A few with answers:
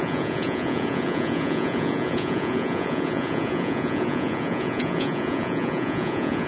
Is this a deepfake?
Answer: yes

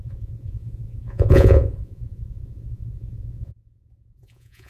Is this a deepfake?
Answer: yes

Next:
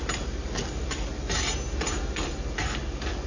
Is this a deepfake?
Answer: no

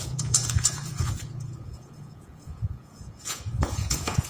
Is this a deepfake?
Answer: yes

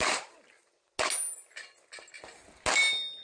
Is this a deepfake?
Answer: no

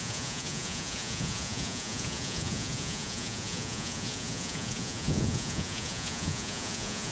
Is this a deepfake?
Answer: yes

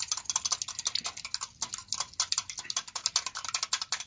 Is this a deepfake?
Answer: no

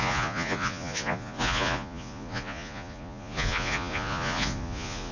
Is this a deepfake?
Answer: yes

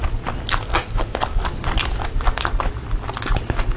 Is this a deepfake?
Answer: no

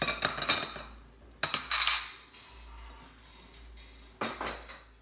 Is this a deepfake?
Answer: no